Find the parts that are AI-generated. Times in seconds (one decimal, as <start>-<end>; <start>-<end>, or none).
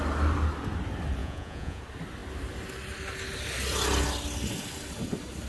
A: 1.2-1.8